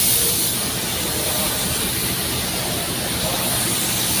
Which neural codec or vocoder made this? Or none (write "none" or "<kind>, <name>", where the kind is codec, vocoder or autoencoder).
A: none